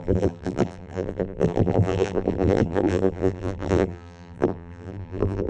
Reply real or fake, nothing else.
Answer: fake